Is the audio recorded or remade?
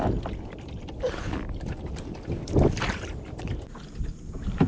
recorded